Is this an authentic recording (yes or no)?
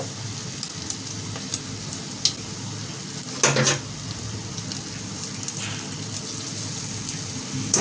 yes